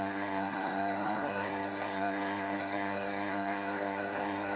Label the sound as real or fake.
fake